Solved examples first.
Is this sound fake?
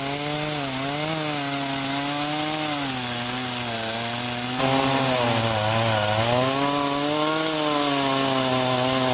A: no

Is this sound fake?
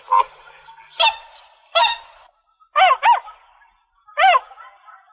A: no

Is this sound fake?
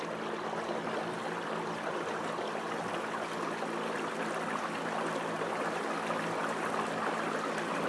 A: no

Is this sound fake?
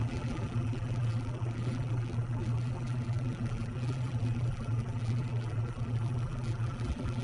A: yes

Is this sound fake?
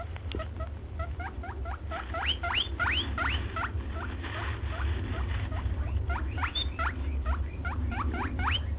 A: no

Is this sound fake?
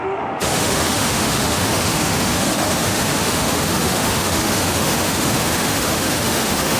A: yes